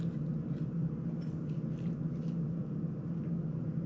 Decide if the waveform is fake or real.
real